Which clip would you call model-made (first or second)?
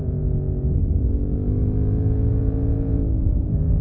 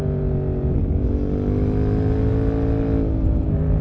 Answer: first